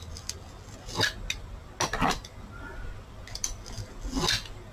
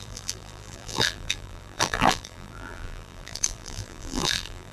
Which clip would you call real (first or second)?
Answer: first